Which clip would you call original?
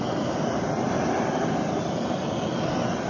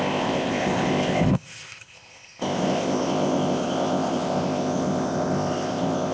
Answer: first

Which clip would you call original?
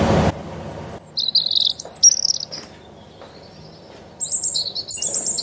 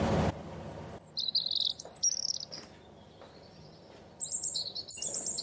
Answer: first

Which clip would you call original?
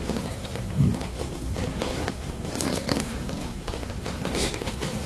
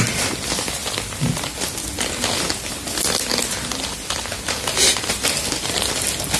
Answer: second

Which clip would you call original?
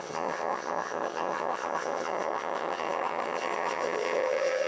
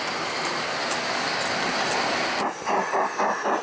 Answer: second